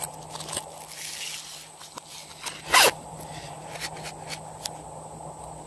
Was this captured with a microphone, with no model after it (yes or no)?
yes